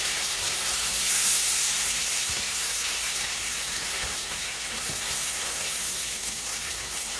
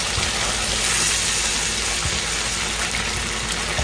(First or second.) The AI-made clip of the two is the first